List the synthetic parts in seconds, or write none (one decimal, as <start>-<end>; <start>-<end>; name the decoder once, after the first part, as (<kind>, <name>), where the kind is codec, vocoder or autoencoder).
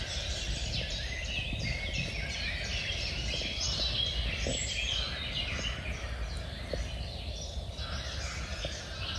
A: none